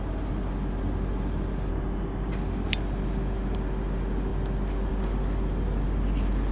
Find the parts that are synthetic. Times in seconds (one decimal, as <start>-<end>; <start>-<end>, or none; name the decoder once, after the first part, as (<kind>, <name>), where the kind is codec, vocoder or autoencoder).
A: 1.7-2.3 (codec, DAC)